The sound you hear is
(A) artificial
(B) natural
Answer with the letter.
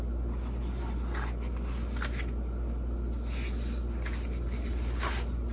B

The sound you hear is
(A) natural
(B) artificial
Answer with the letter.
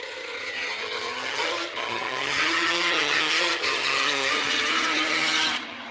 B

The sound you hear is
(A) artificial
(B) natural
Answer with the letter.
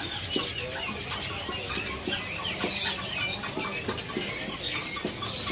B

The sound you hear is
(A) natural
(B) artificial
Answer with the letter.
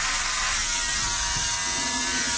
A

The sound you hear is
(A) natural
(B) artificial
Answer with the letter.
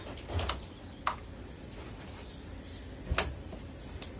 A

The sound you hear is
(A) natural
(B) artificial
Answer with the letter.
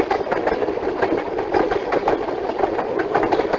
A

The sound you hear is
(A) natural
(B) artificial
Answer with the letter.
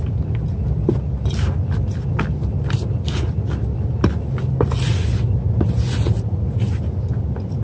A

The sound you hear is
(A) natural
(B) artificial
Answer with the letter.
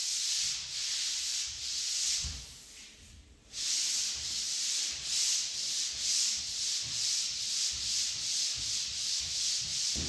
A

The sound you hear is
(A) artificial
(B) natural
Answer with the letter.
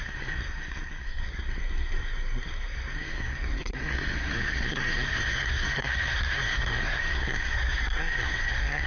A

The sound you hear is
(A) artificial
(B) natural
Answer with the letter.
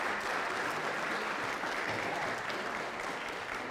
B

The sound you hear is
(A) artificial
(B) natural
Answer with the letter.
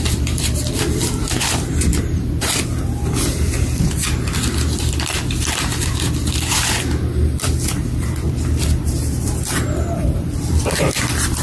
A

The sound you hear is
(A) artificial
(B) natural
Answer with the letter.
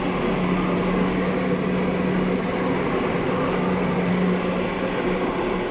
B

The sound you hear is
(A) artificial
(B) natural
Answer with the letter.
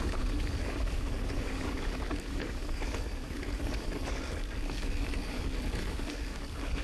A